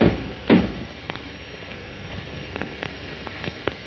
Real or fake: fake